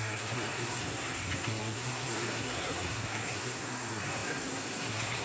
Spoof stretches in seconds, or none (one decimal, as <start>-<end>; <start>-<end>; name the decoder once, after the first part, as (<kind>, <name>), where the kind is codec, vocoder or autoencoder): 0.0-5.2 (codec, SNAC)